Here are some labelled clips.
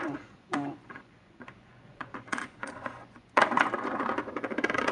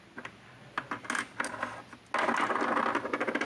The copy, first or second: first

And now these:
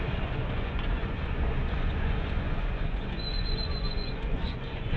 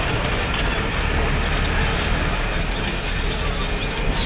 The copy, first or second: first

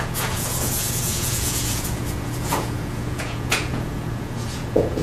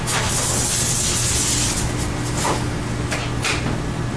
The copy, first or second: first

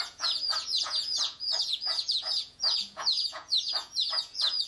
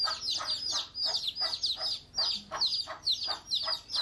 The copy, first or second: first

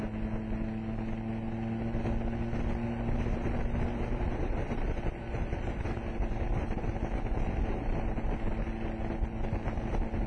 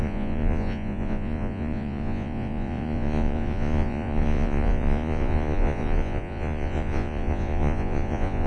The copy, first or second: second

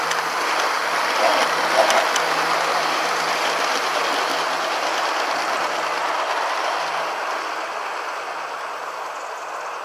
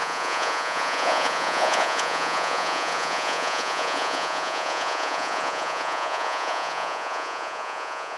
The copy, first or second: second